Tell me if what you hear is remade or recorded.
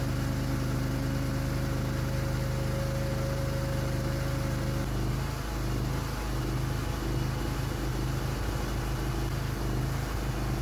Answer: recorded